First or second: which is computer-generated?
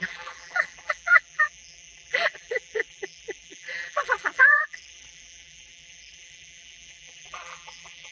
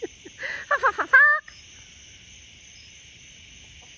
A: first